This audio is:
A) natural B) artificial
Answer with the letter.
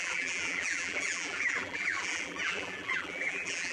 B